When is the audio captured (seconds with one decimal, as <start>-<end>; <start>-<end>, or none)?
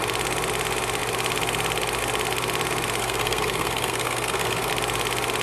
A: 0.0-3.0; 4.7-5.4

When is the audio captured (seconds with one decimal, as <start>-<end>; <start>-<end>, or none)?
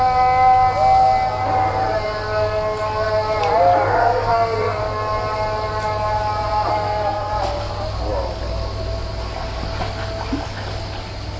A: 0.0-4.0; 4.8-6.7; 7.3-11.4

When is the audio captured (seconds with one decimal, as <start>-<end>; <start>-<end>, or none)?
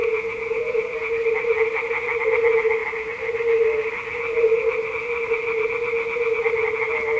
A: 1.1-7.2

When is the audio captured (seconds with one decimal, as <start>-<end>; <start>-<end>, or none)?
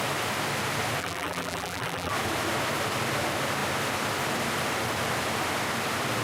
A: 0.0-1.0; 2.1-6.2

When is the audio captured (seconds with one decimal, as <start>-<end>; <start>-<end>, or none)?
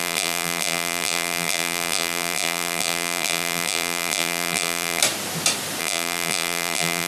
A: 5.0-5.8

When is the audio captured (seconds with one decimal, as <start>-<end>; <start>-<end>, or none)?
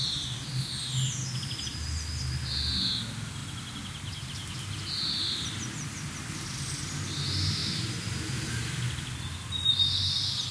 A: 0.6-10.5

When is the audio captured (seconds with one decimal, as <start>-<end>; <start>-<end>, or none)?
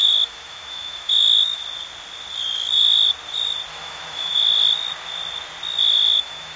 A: 1.6-3.7; 4.3-6.1